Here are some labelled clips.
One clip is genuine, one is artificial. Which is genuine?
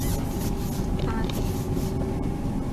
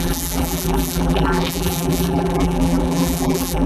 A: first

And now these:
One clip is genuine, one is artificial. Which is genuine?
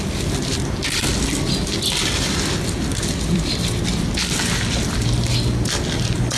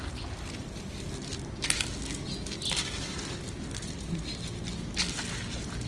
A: second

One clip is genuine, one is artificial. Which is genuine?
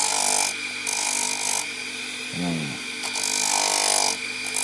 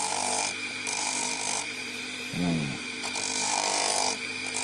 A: first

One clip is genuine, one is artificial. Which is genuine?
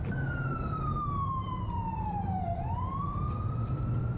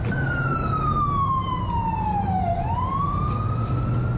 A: second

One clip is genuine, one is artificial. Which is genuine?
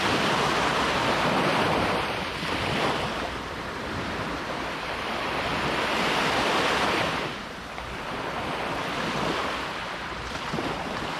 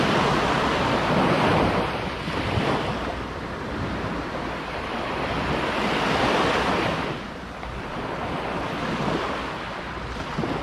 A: second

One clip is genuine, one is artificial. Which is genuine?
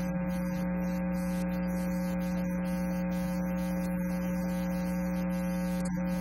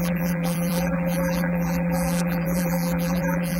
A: first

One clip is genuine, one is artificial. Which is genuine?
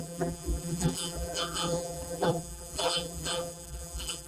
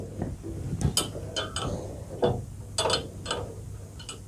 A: second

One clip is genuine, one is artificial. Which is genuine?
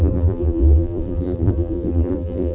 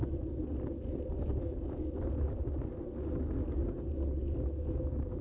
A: second